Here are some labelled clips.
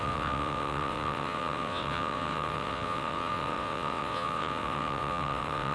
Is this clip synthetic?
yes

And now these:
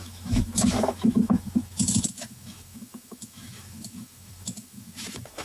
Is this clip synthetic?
yes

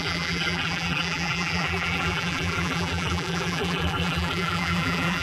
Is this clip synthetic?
yes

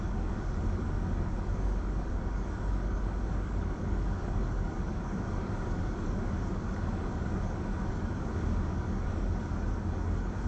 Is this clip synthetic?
yes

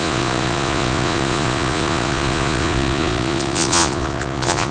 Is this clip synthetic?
yes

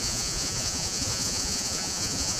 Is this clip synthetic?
yes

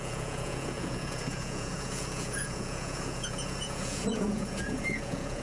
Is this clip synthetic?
yes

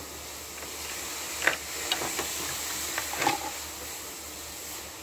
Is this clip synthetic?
no